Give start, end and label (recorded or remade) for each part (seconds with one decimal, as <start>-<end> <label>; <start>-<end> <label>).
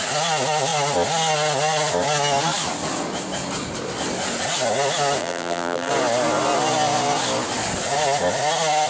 0.0-5.2 recorded; 5.2-5.9 remade; 5.9-8.9 recorded